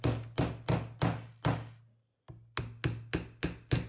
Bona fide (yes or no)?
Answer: yes